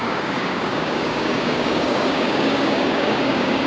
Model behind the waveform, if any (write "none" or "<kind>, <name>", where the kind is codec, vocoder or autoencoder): codec, DAC